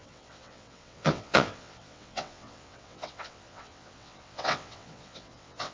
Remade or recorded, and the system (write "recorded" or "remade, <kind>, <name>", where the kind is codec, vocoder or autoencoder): remade, vocoder, WaveNeXt